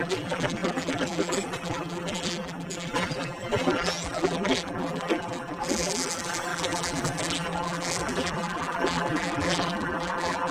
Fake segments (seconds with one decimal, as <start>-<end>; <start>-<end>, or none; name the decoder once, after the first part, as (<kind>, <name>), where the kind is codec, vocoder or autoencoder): 0.0-10.5 (vocoder, BigVGAN v2)